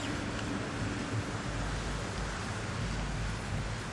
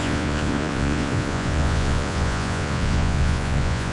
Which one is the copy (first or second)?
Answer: second